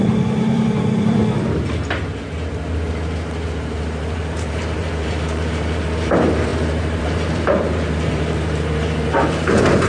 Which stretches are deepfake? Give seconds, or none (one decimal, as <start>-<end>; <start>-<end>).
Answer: 0.0-1.2; 3.5-9.9